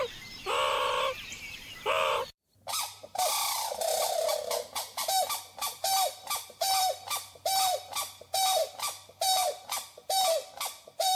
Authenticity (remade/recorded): remade